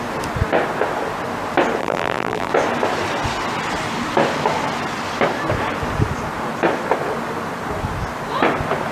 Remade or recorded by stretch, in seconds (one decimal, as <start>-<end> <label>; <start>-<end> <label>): 0.0-1.8 recorded; 1.8-2.5 remade; 2.5-8.9 recorded